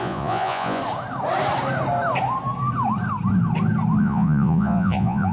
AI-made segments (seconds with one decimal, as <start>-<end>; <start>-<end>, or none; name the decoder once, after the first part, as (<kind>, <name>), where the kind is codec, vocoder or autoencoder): 0.0-0.8 (vocoder, Vocos); 4.0-5.3